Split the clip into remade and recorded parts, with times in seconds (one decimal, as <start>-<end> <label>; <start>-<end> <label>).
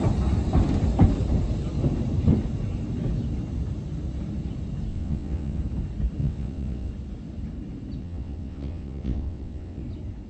0.0-4.9 recorded; 4.9-5.6 remade; 5.6-6.2 recorded; 6.2-6.9 remade; 6.9-8.0 recorded; 8.0-9.8 remade; 9.8-10.3 recorded